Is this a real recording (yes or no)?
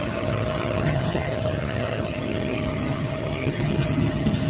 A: no